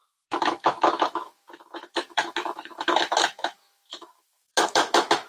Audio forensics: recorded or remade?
remade